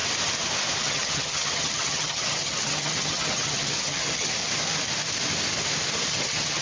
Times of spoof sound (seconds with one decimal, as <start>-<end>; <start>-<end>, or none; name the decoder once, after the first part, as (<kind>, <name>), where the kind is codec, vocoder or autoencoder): 0.8-4.4 (vocoder, HiFi-GAN); 6.1-6.6